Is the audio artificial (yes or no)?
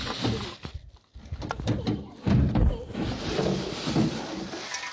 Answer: no